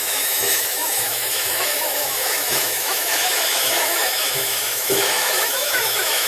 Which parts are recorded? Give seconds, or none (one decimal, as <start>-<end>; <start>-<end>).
none